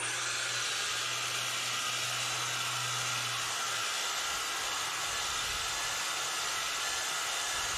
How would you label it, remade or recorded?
recorded